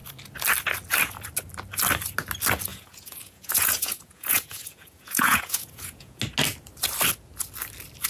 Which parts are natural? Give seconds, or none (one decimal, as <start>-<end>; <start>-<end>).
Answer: 0.0-2.7; 6.2-8.1